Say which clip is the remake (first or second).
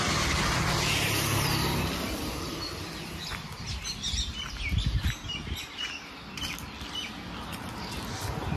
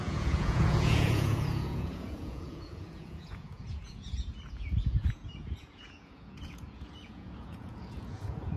second